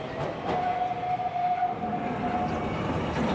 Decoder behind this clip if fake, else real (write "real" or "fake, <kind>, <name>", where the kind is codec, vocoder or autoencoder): real